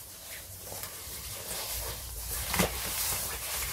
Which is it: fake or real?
fake